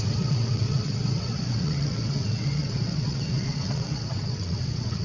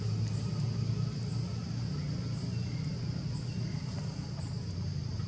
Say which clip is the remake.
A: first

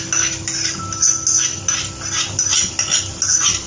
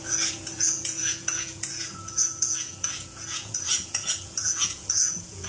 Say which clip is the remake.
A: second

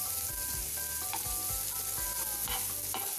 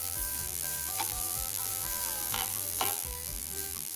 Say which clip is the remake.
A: second